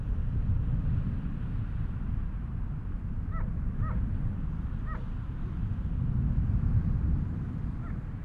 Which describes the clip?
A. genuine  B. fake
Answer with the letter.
A